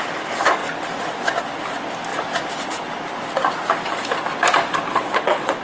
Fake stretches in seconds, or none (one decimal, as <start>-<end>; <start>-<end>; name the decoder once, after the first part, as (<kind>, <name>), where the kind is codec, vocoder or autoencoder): 4.9-5.6 (vocoder, WaveNeXt)